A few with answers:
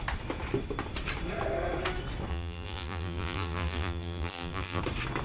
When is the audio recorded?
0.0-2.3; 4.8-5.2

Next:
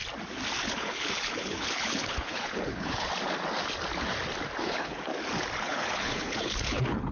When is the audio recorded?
0.0-0.6; 3.1-4.6; 5.1-5.6

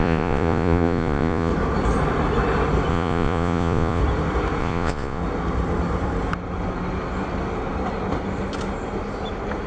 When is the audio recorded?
1.5-2.9; 4.0-4.6; 5.2-9.7

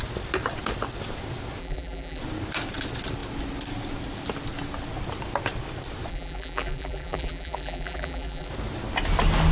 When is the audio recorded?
0.0-1.6; 2.2-6.1; 8.5-9.5

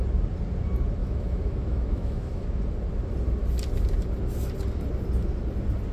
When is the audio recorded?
0.0-1.0; 2.6-5.9

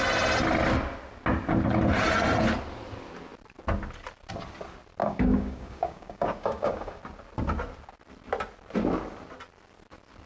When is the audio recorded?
0.0-5.0; 7.0-10.3

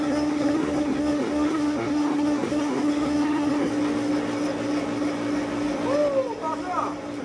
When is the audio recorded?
3.7-7.2

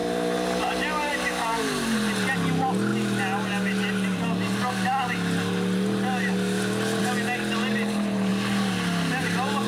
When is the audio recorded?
0.0-9.7